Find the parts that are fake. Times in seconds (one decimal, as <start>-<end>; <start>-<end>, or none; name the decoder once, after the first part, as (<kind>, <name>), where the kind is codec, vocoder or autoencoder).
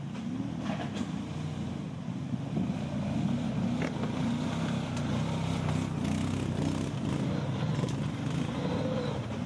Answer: none